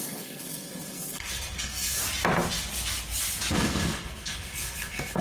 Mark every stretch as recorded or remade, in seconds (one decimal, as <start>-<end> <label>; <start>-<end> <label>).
0.0-2.0 remade; 2.0-3.5 recorded; 3.5-5.2 remade